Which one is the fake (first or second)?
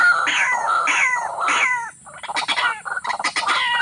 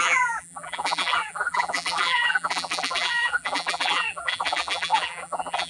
second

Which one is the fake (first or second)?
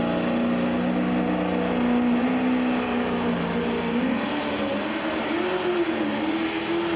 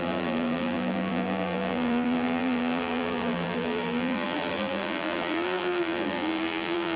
second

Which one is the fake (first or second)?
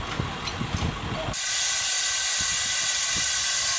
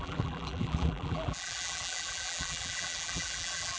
second